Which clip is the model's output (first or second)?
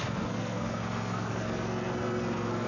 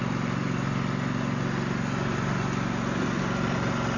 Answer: first